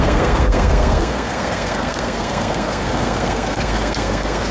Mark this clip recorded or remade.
remade